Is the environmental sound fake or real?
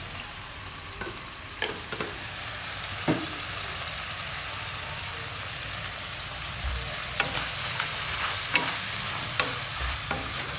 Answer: fake